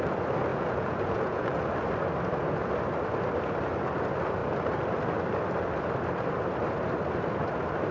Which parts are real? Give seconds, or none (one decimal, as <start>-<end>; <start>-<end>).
0.0-0.5; 1.6-7.9